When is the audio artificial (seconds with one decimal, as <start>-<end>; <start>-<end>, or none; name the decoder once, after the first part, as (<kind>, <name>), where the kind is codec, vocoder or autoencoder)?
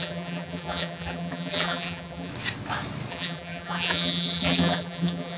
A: 0.0-2.3 (vocoder, BigVGAN v2); 3.1-5.4